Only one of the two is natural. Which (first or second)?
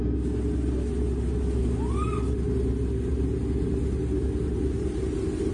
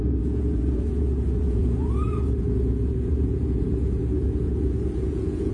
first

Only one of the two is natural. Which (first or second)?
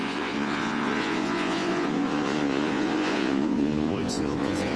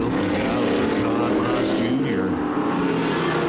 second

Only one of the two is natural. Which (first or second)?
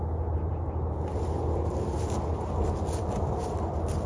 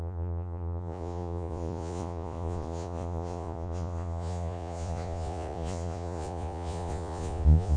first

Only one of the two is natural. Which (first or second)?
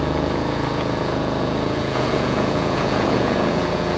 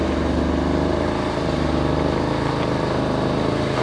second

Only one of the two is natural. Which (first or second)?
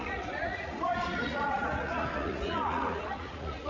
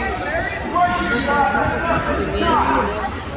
second